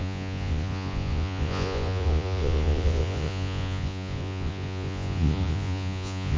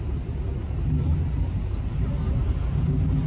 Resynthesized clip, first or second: first